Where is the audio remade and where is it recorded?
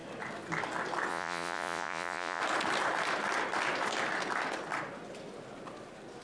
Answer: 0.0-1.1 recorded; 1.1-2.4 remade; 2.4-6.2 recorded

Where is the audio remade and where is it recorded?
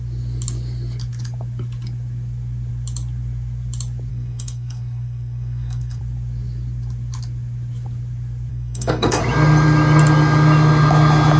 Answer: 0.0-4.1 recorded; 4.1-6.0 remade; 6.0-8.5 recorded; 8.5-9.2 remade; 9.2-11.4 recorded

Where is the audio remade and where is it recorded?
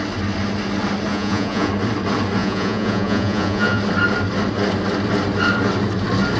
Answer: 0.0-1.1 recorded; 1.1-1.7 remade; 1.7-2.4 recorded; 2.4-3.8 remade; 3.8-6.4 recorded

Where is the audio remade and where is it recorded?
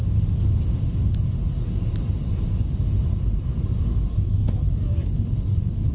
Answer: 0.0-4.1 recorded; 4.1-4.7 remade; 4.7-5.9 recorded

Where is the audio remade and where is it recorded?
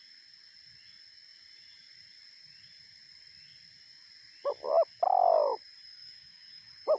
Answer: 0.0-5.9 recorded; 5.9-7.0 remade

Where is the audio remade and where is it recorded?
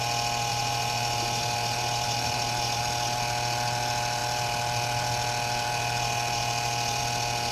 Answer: 0.0-0.5 recorded; 0.5-2.8 remade; 2.8-7.5 recorded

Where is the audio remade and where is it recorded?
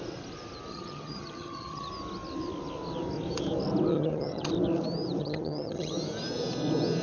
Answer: 0.0-0.7 recorded; 0.7-1.9 remade; 1.9-3.9 recorded; 3.9-4.5 remade; 4.5-5.2 recorded; 5.2-5.9 remade; 5.9-7.0 recorded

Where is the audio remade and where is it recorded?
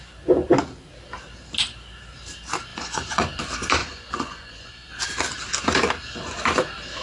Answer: 0.0-2.7 recorded; 2.7-3.4 remade; 3.4-3.8 recorded; 3.8-4.9 remade; 4.9-7.0 recorded